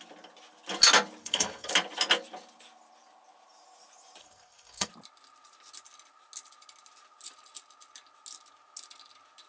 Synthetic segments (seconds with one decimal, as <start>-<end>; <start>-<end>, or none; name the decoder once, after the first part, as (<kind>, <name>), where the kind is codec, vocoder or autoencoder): 1.2-1.7 (codec, SNAC); 4.2-4.9